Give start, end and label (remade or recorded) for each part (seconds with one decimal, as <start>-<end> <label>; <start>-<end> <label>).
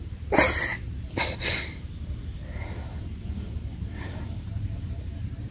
0.0-0.7 remade; 0.7-4.0 recorded; 4.0-5.5 remade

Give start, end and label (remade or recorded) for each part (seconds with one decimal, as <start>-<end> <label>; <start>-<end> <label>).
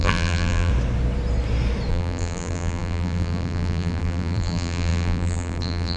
0.0-0.7 remade; 0.7-1.9 recorded; 1.9-6.0 remade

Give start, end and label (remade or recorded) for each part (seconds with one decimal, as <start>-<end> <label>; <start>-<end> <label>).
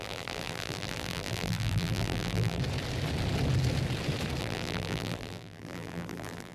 0.0-2.6 remade; 2.6-4.4 recorded; 4.4-6.5 remade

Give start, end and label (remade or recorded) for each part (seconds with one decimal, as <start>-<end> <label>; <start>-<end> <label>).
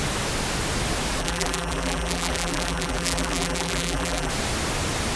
0.0-1.2 recorded; 1.2-4.3 remade; 4.3-5.2 recorded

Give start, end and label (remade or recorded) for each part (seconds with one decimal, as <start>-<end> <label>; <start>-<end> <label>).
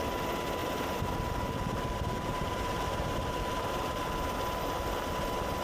0.0-0.6 recorded; 0.6-4.0 remade; 4.0-5.6 recorded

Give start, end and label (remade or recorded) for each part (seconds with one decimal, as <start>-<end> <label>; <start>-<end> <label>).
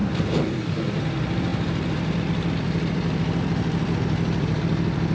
0.0-0.8 recorded; 0.8-5.1 remade